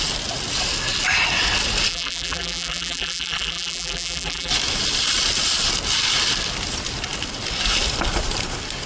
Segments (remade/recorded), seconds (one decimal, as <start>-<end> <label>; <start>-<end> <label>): 0.0-1.9 recorded; 1.9-4.5 remade; 4.5-8.9 recorded